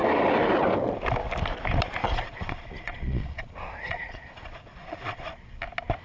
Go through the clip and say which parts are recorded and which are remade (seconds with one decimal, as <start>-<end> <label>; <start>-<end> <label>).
0.0-2.0 recorded; 2.0-5.6 remade; 5.6-6.0 recorded